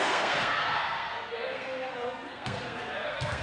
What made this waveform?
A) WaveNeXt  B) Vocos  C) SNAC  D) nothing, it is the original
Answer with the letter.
C